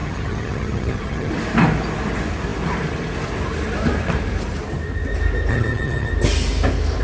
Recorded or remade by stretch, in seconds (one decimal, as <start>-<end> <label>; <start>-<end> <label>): 0.0-1.3 remade; 1.3-5.5 recorded; 5.5-6.1 remade; 6.1-7.0 recorded